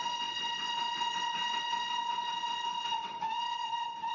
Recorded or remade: remade